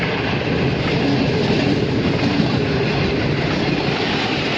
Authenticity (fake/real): real